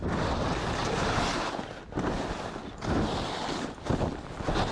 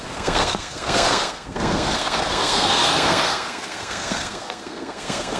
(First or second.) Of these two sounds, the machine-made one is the second